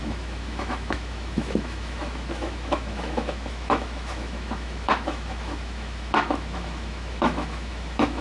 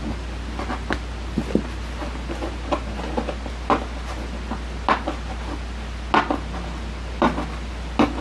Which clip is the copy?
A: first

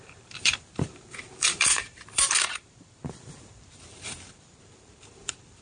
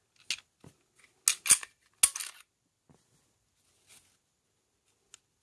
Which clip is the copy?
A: first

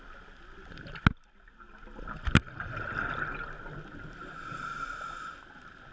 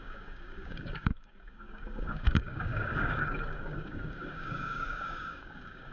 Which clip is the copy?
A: second